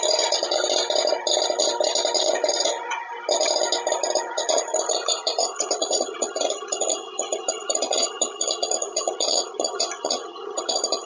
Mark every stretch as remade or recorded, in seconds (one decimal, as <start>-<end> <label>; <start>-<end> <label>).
0.0-0.6 remade; 0.6-2.2 recorded; 2.2-3.0 remade; 3.0-4.2 recorded; 4.2-11.1 remade